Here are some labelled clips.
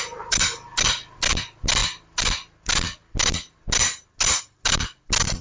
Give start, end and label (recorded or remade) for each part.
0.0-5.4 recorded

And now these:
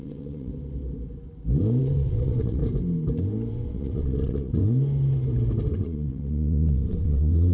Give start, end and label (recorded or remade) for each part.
0.0-0.5 remade; 0.5-1.8 recorded; 1.8-2.6 remade; 2.6-3.5 recorded; 3.5-4.6 remade; 4.6-5.7 recorded; 5.7-7.5 remade

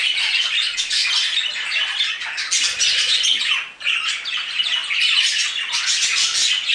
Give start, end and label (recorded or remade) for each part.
0.0-6.7 recorded

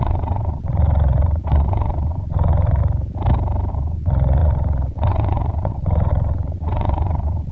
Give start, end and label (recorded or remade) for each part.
0.0-2.8 remade; 2.8-3.7 recorded; 3.7-7.5 remade

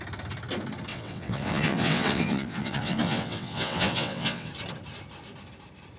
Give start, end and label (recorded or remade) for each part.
0.0-0.9 recorded; 0.9-4.5 remade; 4.5-6.0 recorded